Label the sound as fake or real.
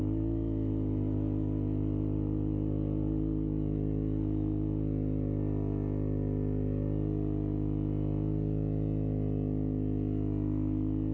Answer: real